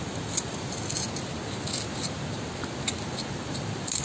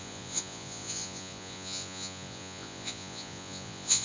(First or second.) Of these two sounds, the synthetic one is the second